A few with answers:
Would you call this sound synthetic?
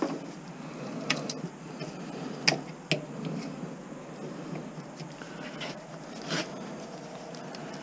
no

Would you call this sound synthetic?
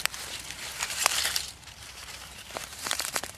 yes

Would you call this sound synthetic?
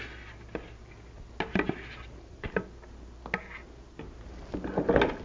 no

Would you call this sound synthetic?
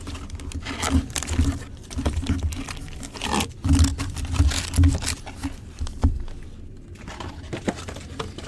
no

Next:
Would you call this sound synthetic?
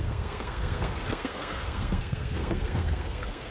yes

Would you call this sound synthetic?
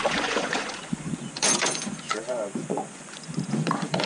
yes